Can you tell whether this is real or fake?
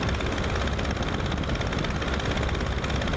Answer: real